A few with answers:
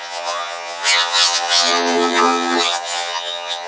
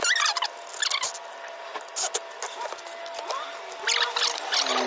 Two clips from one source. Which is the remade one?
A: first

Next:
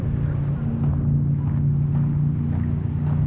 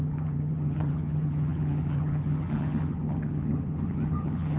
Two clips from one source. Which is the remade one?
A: second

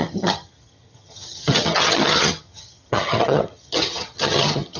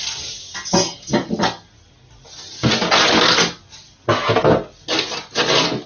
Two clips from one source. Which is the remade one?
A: first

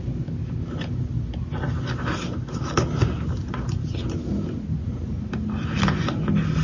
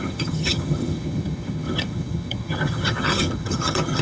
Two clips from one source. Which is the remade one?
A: second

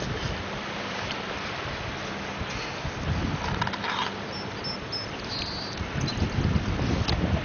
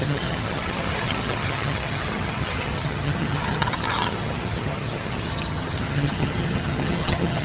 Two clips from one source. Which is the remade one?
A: second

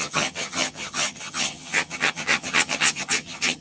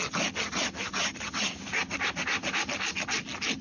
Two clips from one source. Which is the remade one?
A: first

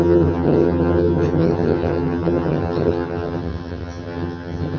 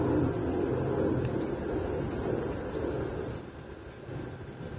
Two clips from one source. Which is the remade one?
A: first